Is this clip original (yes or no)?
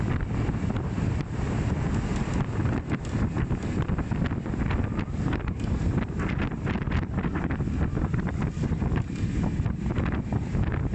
yes